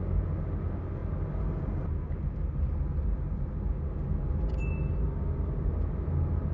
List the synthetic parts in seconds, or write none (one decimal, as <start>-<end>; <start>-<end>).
none